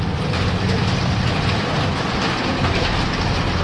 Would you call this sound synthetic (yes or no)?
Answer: no